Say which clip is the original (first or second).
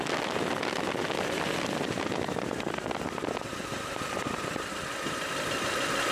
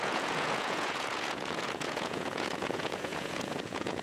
first